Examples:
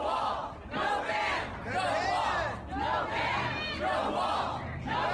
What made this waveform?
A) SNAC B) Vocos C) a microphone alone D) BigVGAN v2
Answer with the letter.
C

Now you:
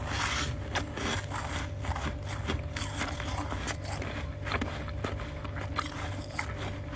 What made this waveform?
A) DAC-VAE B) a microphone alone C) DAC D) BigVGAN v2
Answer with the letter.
B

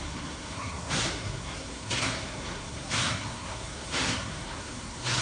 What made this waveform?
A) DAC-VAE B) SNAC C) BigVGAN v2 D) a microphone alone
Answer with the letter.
B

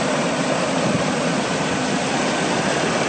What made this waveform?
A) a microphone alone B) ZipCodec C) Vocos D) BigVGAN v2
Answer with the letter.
A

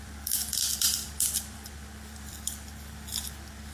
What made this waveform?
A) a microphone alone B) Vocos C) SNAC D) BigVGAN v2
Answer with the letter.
D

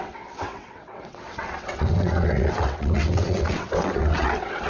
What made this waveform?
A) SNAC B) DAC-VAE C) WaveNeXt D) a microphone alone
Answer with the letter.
C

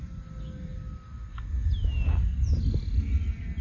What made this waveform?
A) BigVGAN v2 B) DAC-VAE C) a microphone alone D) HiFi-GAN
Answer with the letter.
C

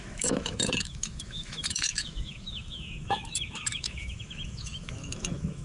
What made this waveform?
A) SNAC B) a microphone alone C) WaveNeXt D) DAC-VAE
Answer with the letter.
D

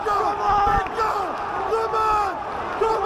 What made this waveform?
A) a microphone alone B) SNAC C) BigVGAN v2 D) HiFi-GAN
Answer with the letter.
A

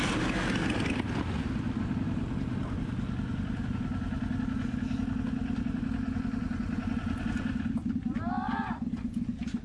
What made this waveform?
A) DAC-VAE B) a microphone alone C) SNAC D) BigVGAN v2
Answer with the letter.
B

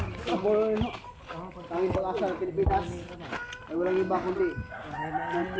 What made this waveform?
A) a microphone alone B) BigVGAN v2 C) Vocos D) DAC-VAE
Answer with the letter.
A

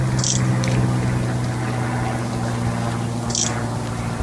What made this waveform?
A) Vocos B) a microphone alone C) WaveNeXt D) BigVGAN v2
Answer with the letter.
B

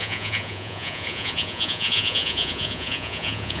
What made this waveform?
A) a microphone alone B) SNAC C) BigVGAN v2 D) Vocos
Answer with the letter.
D